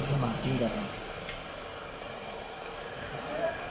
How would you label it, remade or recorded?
recorded